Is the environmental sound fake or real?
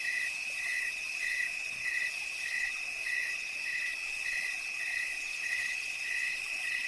fake